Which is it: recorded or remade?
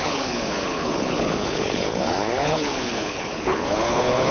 remade